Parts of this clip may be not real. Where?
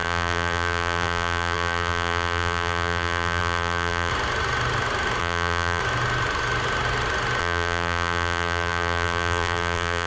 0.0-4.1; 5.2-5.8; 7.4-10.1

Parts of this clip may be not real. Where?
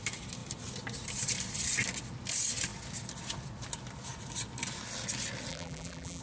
5.5-6.2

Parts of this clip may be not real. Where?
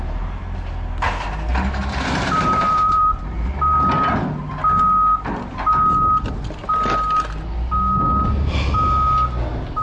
1.5-3.5